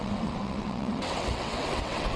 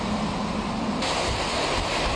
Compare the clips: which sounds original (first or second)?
second